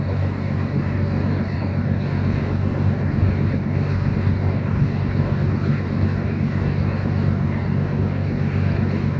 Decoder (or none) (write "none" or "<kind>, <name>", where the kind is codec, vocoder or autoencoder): codec, DAC